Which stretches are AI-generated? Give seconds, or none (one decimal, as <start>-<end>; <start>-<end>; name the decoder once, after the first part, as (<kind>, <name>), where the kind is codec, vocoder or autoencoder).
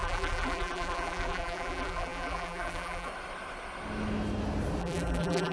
0.0-3.1 (vocoder, BigVGAN v2); 4.8-5.5